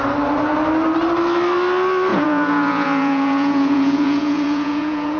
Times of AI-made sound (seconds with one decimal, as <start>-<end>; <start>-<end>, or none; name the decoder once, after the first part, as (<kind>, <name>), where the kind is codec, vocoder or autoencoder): 2.1-5.2 (vocoder, Vocos)